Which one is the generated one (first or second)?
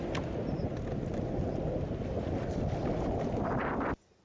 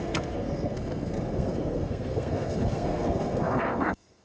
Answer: second